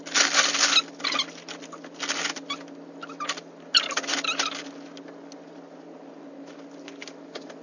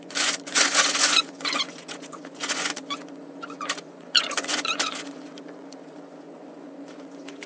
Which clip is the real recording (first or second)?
first